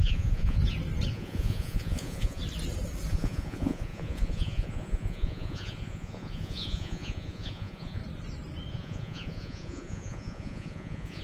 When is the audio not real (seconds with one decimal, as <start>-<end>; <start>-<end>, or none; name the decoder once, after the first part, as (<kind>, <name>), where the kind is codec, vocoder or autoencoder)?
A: 0.0-0.6 (vocoder, Vocos); 1.1-2.4; 3.1-8.0; 8.7-11.2

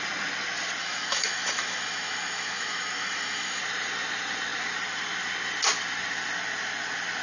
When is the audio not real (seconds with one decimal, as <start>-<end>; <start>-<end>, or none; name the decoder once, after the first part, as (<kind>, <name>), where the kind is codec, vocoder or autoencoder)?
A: 0.8-3.6 (autoencoder, DAC-VAE)

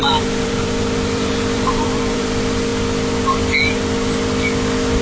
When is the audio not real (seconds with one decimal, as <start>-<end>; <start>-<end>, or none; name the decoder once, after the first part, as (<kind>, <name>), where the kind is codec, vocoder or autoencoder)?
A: 0.0-2.7 (vocoder, BigVGAN v2)

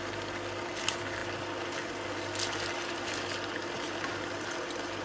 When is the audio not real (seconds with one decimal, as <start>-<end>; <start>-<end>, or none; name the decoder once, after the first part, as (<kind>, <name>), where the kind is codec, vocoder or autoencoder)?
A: none

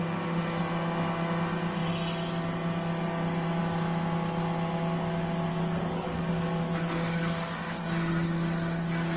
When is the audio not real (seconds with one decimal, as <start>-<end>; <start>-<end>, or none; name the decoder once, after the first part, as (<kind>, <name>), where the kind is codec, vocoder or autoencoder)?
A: 5.5-7.8 (codec, DAC)

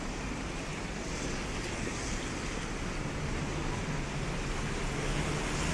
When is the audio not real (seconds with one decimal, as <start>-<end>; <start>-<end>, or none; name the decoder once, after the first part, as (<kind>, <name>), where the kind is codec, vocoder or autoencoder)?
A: none

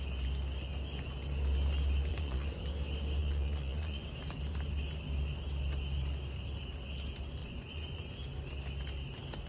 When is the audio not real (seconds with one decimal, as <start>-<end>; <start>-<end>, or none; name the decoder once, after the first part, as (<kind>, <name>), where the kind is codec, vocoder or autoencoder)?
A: 2.1-2.6 (vocoder, Vocos); 3.2-4.0; 7.4-8.0